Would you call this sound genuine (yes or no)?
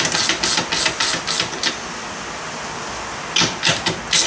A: yes